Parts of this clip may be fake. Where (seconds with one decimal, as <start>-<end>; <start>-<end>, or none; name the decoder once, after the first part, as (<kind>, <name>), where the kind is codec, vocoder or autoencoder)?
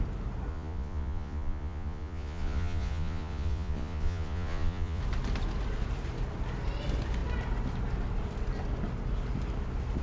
0.5-5.0 (vocoder, Vocos)